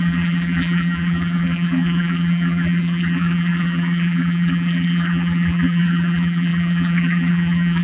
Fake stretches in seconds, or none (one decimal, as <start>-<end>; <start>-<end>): 0.0-7.8